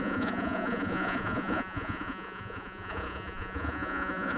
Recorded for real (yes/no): no